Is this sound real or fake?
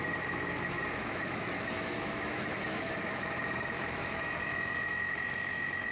fake